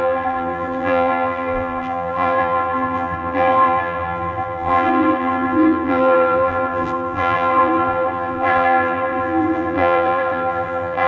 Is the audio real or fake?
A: fake